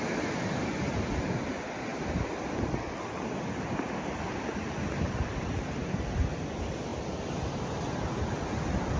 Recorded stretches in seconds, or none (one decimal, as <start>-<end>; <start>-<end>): 0.0-9.0